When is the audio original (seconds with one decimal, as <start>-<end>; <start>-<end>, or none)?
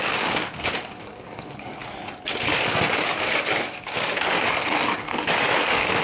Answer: 1.8-3.0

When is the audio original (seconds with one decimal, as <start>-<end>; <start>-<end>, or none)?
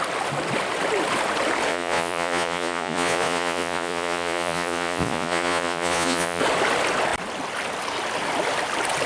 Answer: 0.0-1.7; 6.4-9.1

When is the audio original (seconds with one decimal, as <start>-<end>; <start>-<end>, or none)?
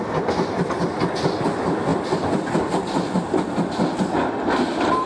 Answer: 0.0-5.1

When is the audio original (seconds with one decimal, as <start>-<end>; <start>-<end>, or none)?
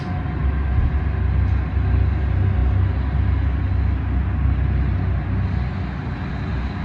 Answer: 0.0-6.8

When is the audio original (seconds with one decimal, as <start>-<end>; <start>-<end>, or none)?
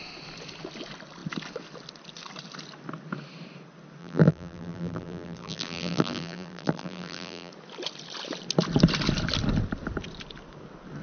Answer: 0.0-4.0; 7.5-11.0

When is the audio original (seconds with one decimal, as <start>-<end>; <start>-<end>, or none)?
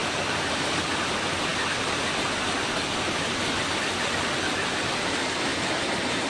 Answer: 0.9-6.3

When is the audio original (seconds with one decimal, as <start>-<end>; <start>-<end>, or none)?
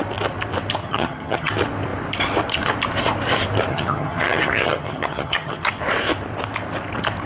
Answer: 0.0-0.8; 1.5-3.7; 5.7-7.3